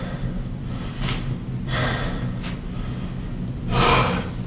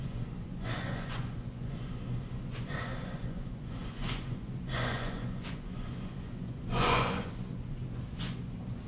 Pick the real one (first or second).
first